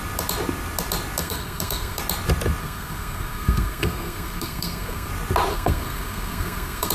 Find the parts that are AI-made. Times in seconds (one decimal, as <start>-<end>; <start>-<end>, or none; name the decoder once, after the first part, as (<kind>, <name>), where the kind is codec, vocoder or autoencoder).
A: 1.2-2.0 (codec, SNAC); 2.6-5.1; 5.5-6.9